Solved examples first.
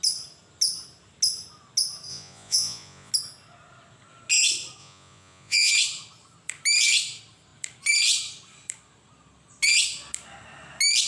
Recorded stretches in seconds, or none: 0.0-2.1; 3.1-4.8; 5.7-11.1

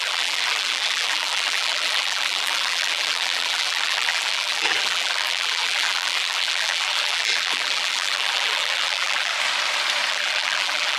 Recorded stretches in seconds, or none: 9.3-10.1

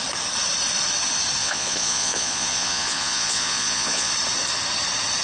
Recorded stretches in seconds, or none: 0.0-1.4; 4.1-5.2

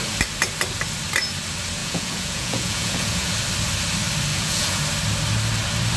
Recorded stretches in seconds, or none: 0.0-1.8; 3.3-4.3; 4.8-6.0

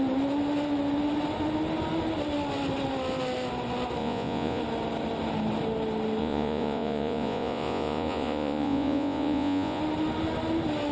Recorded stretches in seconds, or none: 0.0-4.0; 4.6-6.2; 9.8-10.9